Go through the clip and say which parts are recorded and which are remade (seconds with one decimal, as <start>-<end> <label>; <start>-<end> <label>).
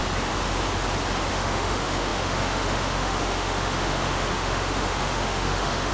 0.0-1.3 recorded; 1.3-5.9 remade